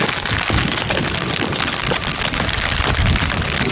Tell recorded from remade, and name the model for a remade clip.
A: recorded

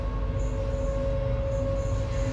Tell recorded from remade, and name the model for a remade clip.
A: recorded